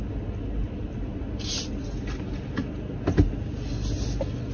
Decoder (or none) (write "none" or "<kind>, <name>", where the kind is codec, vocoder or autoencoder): none